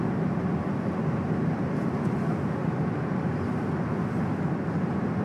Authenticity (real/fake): real